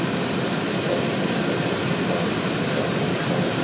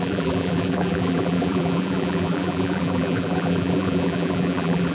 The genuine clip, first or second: first